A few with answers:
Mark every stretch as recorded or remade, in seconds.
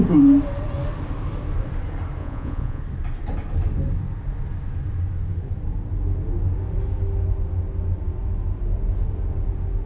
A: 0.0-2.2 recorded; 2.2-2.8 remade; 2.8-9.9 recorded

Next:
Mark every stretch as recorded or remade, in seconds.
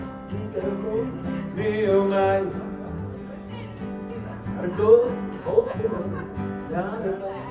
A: 0.0-5.4 recorded; 5.4-6.0 remade; 6.0-7.5 recorded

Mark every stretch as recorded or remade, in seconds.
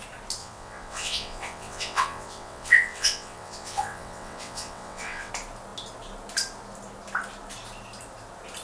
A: 0.0-0.4 recorded; 0.4-5.3 remade; 5.3-8.6 recorded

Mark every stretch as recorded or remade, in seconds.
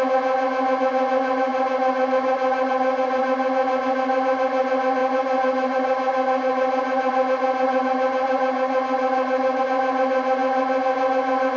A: 0.0-1.5 recorded; 1.5-3.2 remade; 3.2-5.0 recorded; 5.0-9.6 remade; 9.6-11.6 recorded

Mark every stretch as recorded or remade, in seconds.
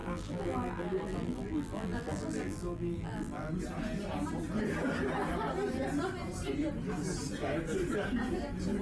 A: 0.0-3.5 remade; 3.5-8.8 recorded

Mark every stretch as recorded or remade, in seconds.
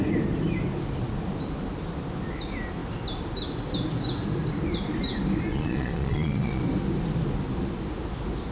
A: 0.0-5.5 recorded; 5.5-6.6 remade; 6.6-8.5 recorded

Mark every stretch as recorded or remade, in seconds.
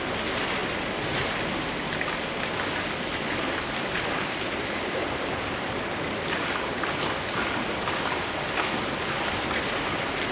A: 0.0-5.0 recorded; 5.0-5.7 remade; 5.7-10.3 recorded